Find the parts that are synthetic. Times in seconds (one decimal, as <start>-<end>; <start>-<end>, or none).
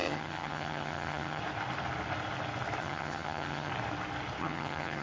0.0-1.4; 2.8-3.7; 4.4-5.0